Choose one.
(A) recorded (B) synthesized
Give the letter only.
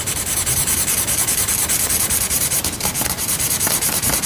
B